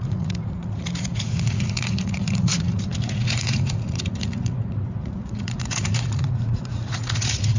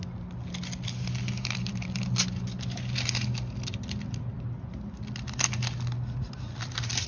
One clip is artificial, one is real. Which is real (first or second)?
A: second